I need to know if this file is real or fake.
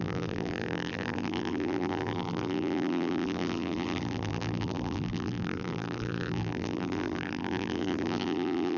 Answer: fake